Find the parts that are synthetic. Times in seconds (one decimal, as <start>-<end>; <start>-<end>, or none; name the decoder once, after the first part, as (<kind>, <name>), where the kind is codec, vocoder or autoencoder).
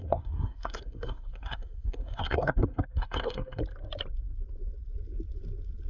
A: 0.0-3.6 (codec, SNAC)